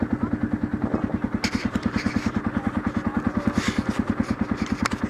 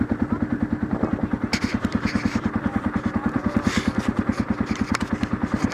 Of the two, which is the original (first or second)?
first